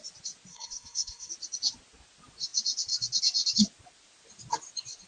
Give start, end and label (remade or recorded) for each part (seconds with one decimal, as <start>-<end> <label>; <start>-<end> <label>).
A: 0.0-0.5 recorded; 0.5-1.3 remade; 1.3-5.1 recorded